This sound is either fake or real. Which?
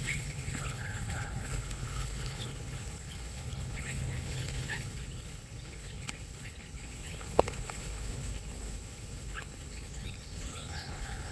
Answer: fake